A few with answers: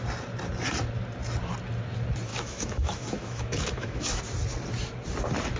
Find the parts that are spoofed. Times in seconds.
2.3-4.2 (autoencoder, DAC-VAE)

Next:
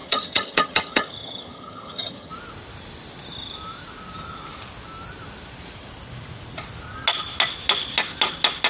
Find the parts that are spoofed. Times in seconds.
0.0-2.3 (vocoder, HiFi-GAN)

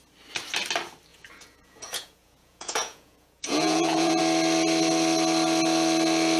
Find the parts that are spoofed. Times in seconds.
1.1-4.2 (vocoder, Vocos)

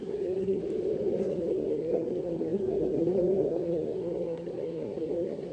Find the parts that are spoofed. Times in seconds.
0.0-0.6 (codec, SNAC); 1.2-5.5

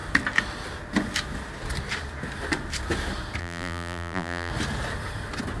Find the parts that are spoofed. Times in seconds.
3.4-4.5 (vocoder, BigVGAN v2)